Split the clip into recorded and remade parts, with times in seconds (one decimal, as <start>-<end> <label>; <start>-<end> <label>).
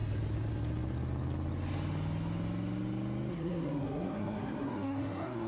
0.0-3.3 recorded; 3.3-5.5 remade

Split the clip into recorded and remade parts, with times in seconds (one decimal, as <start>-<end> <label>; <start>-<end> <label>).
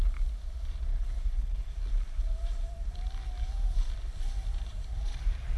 0.0-0.9 recorded; 0.9-1.7 remade; 1.7-5.6 recorded